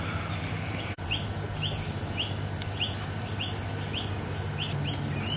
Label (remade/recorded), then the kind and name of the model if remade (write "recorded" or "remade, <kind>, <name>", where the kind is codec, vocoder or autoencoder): recorded